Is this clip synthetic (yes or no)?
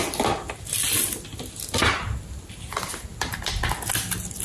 no